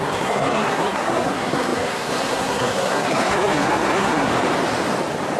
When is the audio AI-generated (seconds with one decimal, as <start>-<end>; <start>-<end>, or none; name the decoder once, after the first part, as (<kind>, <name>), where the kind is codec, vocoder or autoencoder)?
0.0-4.3 (codec, SNAC)